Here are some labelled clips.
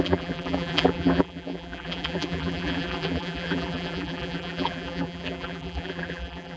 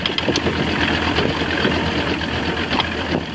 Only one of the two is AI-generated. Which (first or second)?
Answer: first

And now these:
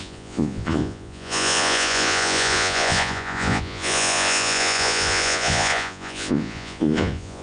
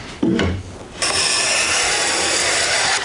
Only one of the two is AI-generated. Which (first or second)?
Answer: first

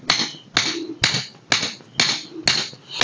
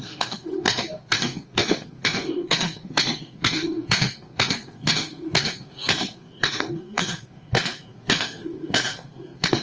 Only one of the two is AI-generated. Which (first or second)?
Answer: second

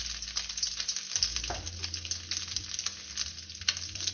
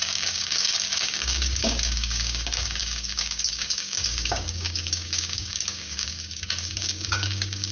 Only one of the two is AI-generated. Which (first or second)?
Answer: second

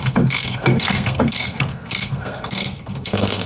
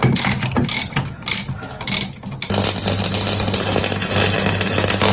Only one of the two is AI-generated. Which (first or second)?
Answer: first